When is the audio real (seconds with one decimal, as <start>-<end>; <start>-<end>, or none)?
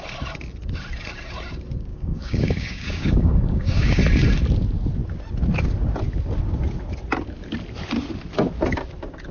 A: 0.0-1.9; 4.0-9.3